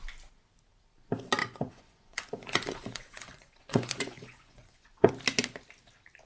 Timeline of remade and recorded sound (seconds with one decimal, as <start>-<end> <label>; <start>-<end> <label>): 0.0-1.4 recorded; 1.4-5.1 remade; 5.1-6.3 recorded